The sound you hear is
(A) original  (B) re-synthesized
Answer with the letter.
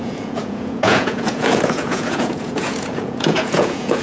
B